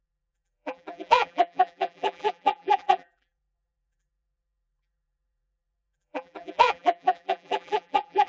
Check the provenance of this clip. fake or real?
fake